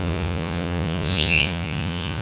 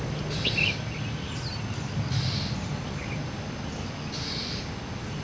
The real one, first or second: second